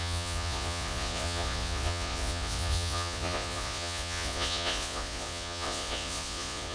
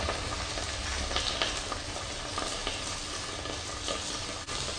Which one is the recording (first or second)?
second